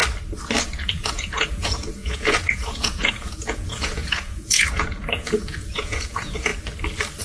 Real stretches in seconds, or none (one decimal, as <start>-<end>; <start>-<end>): 0.0-0.8; 6.5-7.2